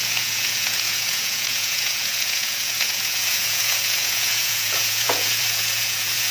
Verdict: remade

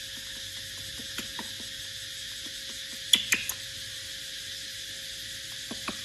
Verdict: recorded